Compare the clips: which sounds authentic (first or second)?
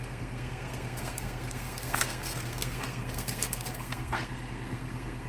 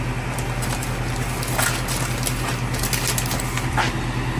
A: second